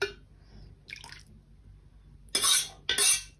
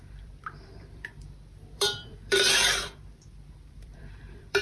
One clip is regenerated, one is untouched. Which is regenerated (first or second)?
second